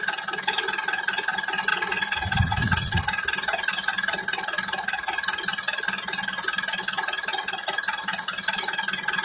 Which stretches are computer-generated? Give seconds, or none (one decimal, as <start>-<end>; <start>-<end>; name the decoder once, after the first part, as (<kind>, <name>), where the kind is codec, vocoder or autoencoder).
1.7-3.0 (vocoder, Vocos)